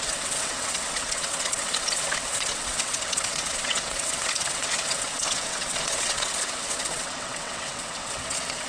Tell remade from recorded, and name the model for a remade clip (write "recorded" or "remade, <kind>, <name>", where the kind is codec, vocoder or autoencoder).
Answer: remade, vocoder, WaveNeXt